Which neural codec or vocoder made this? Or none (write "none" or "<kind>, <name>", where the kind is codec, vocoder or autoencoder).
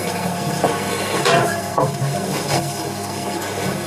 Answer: codec, SNAC